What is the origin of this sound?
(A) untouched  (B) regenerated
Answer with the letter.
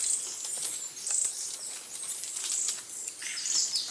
A